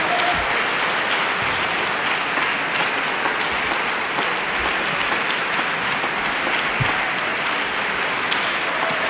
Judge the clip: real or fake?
real